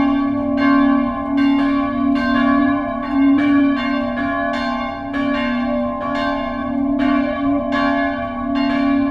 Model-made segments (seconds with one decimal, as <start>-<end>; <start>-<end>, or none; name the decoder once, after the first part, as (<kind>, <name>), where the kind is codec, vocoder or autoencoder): 2.6-3.6 (vocoder, BigVGAN v2); 6.6-7.6